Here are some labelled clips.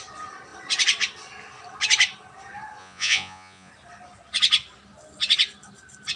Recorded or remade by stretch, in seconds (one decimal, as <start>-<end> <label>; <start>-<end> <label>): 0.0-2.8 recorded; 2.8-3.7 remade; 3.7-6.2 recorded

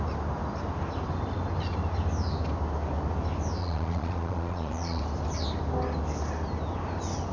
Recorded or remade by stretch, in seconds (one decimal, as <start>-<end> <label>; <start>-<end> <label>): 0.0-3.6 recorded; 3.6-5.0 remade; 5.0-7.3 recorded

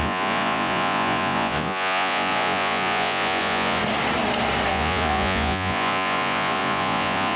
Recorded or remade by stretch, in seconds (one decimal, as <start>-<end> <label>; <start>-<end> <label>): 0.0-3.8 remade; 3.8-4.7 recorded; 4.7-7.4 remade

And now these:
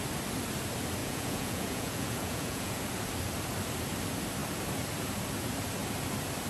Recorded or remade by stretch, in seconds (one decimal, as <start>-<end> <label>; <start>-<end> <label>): 0.0-1.0 recorded; 1.0-2.8 remade; 2.8-6.5 recorded

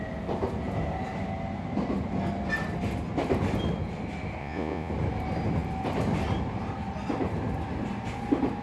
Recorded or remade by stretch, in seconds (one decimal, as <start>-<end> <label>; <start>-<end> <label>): 0.0-4.4 recorded; 4.4-4.9 remade; 4.9-8.6 recorded

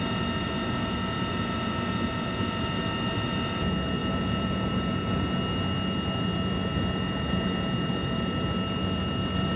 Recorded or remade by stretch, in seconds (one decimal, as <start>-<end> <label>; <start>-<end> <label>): 0.0-4.0 recorded; 4.0-5.2 remade; 5.2-9.6 recorded

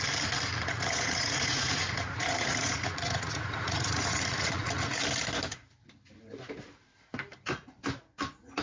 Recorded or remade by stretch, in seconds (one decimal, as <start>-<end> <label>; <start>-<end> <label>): 0.0-0.6 recorded; 0.6-5.0 remade; 5.0-8.6 recorded